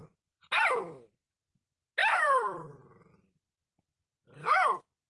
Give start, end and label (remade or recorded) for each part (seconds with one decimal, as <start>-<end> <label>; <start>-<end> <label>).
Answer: 0.0-2.0 recorded; 2.0-3.1 remade; 3.1-4.1 recorded; 4.1-5.1 remade